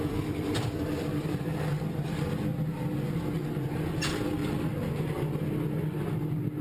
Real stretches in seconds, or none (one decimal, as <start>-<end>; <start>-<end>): 2.5-3.9; 4.4-6.6